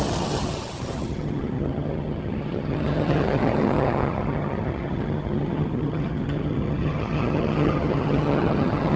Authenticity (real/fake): fake